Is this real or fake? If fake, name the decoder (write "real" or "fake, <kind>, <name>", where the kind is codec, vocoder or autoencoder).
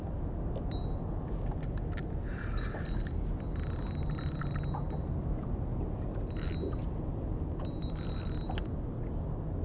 real